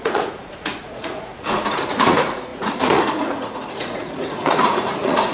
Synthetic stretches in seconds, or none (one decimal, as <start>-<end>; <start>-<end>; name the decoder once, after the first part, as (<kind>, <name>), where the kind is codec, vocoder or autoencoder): 0.0-5.3 (vocoder, Vocos)